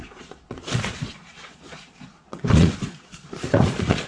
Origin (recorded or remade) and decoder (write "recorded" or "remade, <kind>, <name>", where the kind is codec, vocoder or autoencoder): remade, vocoder, Vocos